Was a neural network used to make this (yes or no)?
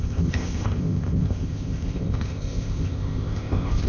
yes